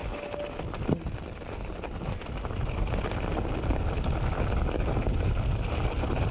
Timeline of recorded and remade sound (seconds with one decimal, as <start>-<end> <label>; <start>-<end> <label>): 0.0-6.3 recorded